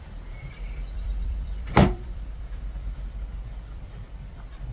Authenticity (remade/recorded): remade